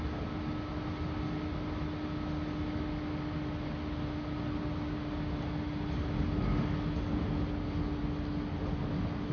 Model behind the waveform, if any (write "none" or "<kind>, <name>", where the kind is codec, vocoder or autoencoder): none